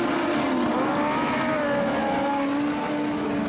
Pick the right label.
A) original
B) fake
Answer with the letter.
A